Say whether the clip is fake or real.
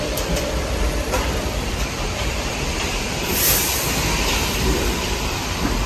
fake